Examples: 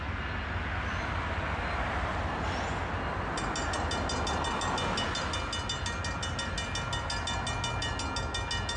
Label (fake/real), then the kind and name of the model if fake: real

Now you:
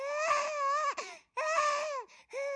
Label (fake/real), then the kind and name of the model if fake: real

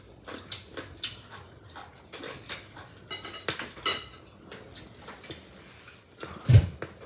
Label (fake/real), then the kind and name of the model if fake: real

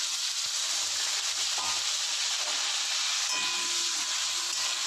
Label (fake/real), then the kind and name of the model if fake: real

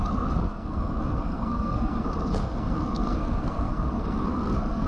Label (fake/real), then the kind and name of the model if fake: fake, codec, SNAC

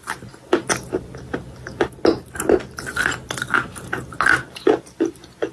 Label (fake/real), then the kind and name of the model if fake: real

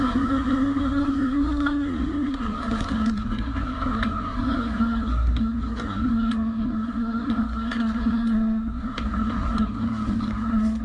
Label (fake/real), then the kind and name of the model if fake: fake, codec, SNAC